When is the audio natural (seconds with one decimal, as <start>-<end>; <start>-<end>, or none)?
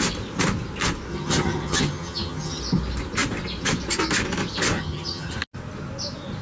0.0-1.1; 2.6-4.8; 5.3-6.4